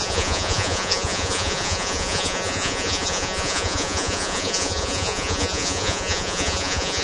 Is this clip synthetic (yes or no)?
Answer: yes